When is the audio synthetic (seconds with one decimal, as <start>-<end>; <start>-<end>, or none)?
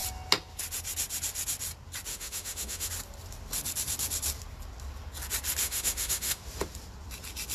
2.1-2.9; 5.6-6.4